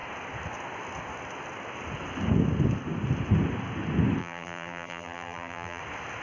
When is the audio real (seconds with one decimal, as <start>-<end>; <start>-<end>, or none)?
0.0-4.2; 5.8-6.2